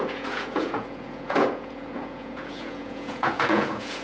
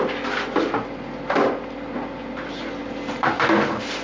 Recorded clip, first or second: second